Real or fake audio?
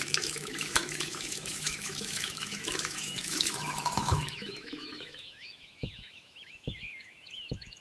fake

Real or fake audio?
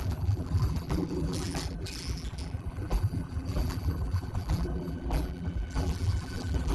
fake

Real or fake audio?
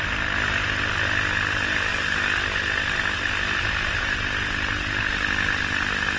real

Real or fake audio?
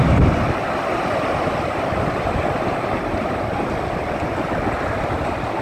real